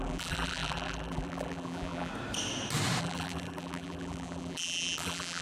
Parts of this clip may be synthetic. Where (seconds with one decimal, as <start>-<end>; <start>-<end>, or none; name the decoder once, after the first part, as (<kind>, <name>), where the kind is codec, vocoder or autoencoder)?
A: 0.0-2.1 (vocoder, BigVGAN v2); 3.0-5.4

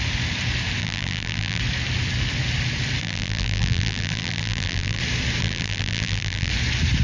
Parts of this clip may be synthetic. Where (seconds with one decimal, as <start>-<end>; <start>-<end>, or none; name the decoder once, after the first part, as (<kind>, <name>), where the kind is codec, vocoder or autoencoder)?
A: 0.8-1.6 (vocoder, BigVGAN v2); 3.0-5.0; 5.4-6.5

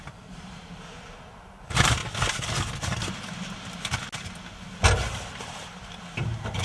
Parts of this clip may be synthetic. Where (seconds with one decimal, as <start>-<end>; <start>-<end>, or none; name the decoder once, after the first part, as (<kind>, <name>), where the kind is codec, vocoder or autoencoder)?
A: 0.0-2.0 (vocoder, BigVGAN v2); 5.4-6.6

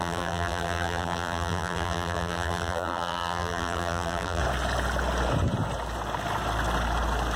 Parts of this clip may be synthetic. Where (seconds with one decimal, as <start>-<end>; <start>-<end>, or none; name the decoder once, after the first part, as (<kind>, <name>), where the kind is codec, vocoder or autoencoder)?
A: 0.0-4.4 (vocoder, BigVGAN v2)